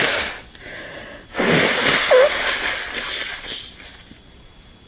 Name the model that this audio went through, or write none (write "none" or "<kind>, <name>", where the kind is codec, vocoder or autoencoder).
none